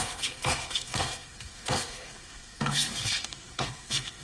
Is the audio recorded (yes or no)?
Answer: no